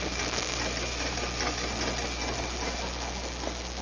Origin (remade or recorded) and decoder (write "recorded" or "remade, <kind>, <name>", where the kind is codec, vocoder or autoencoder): recorded